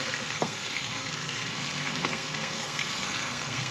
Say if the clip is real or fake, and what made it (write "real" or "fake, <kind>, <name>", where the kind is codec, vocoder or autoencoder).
fake, codec, SNAC